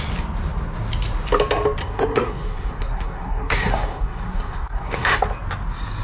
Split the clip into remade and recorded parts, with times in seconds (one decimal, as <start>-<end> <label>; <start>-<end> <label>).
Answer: 0.0-1.8 recorded; 1.8-5.2 remade; 5.2-6.0 recorded